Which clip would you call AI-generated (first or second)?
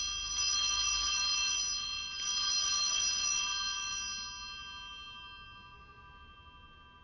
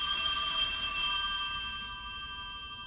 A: second